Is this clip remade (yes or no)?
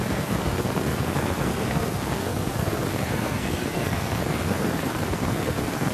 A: yes